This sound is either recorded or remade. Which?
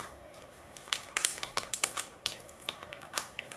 remade